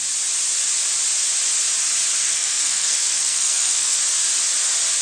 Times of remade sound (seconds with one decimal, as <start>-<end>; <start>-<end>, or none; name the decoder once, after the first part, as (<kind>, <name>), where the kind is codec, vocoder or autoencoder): 2.2-4.0 (codec, SNAC)